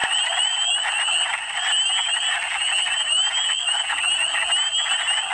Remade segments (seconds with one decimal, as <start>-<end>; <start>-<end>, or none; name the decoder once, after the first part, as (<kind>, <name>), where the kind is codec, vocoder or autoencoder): none